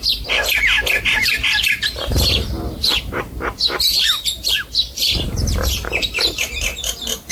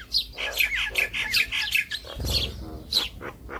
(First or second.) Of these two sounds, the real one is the second